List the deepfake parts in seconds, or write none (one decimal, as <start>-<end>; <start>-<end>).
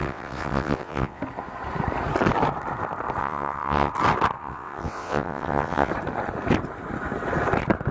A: 0.0-1.2; 3.2-3.9; 4.4-5.9